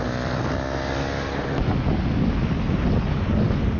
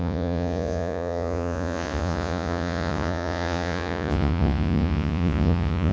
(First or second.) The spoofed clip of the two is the second